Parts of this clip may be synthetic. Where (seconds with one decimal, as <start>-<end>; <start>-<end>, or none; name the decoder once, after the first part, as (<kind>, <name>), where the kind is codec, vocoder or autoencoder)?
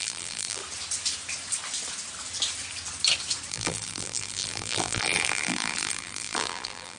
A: 0.0-0.6 (vocoder, BigVGAN v2); 3.5-7.0